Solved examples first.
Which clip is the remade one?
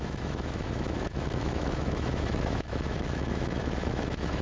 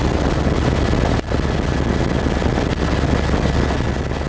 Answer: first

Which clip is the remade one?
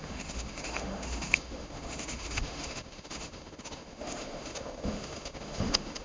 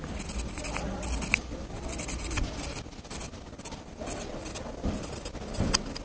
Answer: first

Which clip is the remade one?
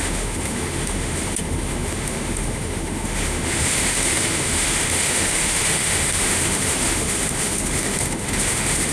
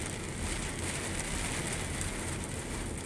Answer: first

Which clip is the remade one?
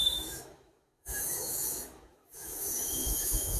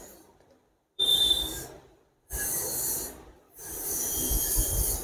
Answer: first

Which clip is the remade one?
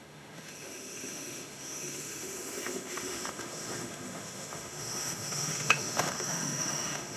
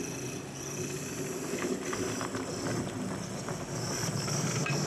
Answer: first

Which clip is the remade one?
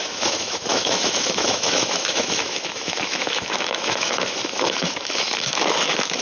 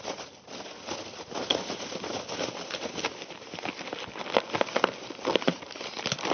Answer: first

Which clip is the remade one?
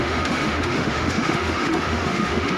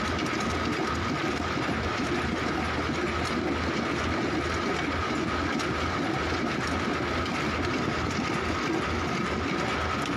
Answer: first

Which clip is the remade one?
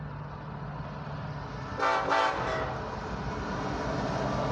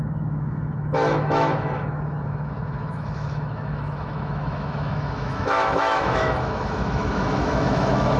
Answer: second